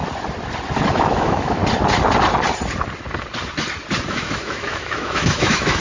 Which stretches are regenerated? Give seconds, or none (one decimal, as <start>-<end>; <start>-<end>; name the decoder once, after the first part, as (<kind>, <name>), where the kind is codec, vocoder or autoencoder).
0.9-1.6 (autoencoder, DAC-VAE); 4.1-5.8